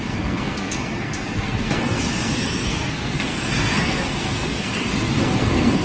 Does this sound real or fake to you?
fake